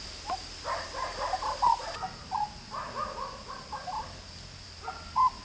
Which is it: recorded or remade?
recorded